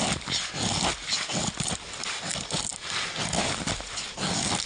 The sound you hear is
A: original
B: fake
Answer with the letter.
A